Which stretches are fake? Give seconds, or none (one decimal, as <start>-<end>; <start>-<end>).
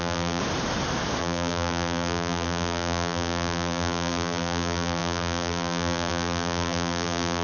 0.0-0.4; 1.2-7.4